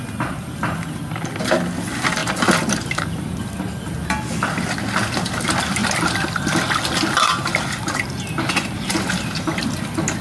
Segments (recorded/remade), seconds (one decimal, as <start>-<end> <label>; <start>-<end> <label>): 0.0-5.8 recorded; 5.8-6.8 remade; 6.8-10.2 recorded